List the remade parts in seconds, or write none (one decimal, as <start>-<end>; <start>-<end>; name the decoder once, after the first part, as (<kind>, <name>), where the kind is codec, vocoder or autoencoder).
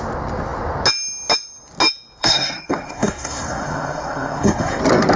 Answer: 2.2-4.8 (codec, SNAC)